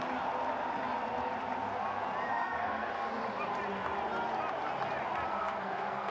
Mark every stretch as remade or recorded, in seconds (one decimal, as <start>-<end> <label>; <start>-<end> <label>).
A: 0.0-2.3 recorded; 2.3-2.9 remade; 2.9-5.3 recorded; 5.3-6.1 remade

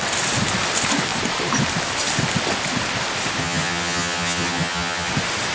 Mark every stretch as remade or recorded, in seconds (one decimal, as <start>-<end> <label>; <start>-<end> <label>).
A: 0.0-3.4 recorded; 3.4-5.1 remade; 5.1-5.5 recorded

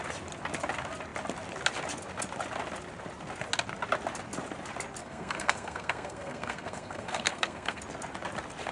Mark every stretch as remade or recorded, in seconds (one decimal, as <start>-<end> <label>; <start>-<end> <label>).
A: 0.0-5.0 recorded; 5.0-7.8 remade; 7.8-8.7 recorded

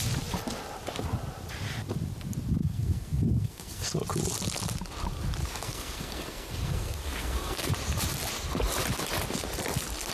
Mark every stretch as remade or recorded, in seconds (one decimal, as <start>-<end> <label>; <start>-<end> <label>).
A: 0.0-2.6 recorded; 2.6-3.9 remade; 3.9-5.4 recorded; 5.4-7.7 remade; 7.7-10.1 recorded

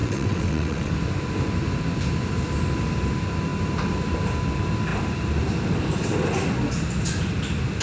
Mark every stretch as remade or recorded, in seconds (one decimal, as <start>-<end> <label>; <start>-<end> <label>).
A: 0.0-0.9 remade; 0.9-7.8 recorded

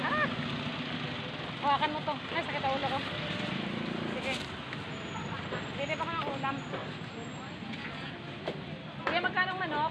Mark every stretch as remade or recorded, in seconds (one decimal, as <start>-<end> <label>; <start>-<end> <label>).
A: 0.0-9.9 recorded

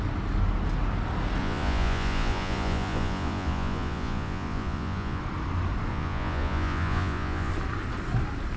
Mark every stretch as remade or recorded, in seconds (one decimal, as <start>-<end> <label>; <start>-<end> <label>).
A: 0.0-1.4 recorded; 1.4-5.2 remade; 5.2-5.9 recorded; 5.9-7.5 remade; 7.5-8.6 recorded